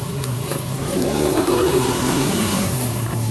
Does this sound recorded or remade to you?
remade